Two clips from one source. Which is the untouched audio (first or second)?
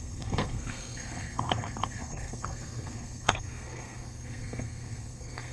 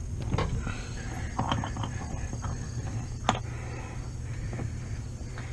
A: second